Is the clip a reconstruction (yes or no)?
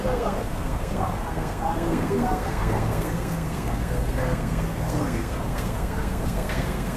yes